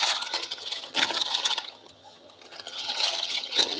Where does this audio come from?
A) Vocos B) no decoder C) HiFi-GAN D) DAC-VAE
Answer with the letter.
C